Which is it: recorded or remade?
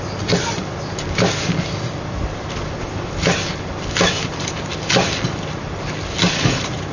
recorded